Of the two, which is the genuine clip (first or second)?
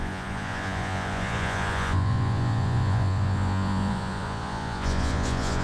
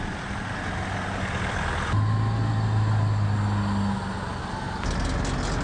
second